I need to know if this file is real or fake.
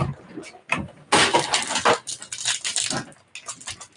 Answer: real